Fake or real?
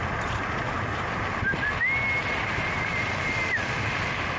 real